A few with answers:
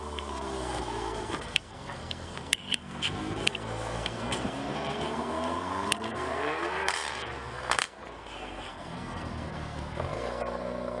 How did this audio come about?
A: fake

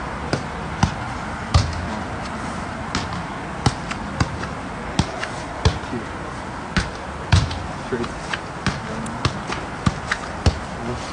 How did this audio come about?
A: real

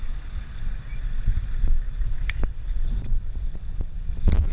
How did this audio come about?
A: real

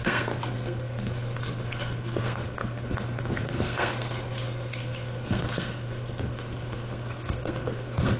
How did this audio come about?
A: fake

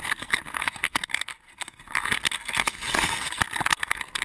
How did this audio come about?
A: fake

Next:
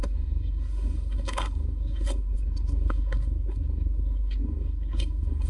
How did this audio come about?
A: fake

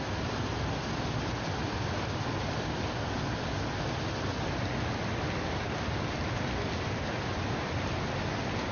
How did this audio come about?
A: real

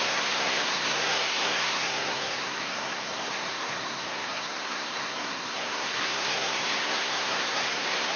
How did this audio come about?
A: fake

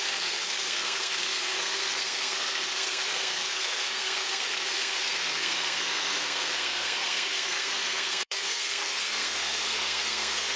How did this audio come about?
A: fake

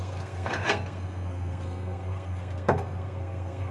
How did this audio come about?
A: fake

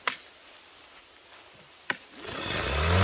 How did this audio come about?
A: real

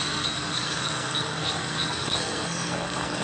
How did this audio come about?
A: fake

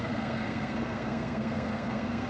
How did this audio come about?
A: fake